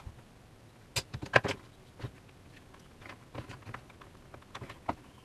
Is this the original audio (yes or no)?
yes